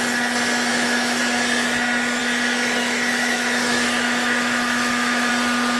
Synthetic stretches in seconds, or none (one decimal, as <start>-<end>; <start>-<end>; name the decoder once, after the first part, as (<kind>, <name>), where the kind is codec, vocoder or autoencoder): 0.7-1.2 (autoencoder, DAC-VAE); 2.2-5.3